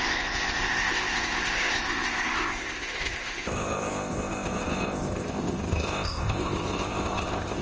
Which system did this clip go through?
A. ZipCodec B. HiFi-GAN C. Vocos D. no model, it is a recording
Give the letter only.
A